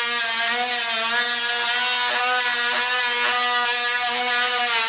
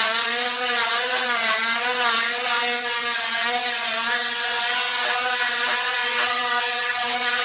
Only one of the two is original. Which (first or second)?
first